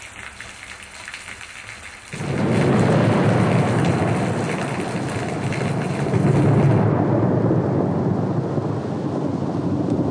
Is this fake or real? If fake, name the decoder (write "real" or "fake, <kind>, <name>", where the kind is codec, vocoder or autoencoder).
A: real